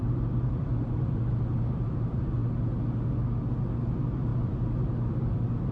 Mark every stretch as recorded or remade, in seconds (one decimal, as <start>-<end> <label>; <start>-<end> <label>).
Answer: 0.0-1.3 remade; 1.3-1.9 recorded; 1.9-2.4 remade; 2.4-3.9 recorded; 3.9-4.3 remade; 4.3-5.1 recorded; 5.1-5.7 remade